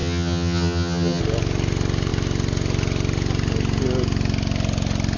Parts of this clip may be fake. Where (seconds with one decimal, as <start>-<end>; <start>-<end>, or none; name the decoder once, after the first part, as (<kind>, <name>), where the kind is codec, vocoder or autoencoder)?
0.0-1.2 (vocoder, HiFi-GAN)